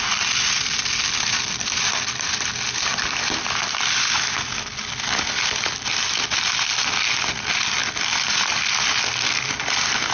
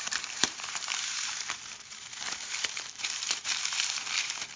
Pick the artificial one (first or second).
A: second